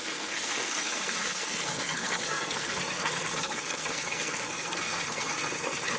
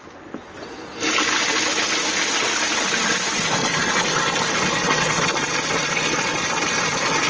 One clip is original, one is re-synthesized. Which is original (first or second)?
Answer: second